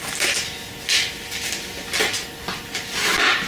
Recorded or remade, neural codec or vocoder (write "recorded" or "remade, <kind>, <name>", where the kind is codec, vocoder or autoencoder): recorded